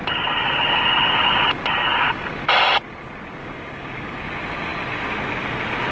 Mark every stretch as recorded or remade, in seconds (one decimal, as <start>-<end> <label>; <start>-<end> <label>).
0.0-3.4 recorded; 3.4-4.2 remade; 4.2-5.9 recorded